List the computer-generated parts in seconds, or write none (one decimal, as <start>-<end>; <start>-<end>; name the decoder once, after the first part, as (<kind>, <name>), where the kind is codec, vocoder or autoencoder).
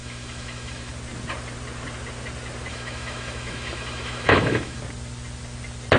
0.0-0.9 (autoencoder, DAC-VAE); 2.7-4.8